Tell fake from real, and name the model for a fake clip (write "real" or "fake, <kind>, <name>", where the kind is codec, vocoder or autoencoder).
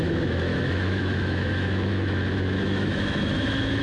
fake, autoencoder, DAC-VAE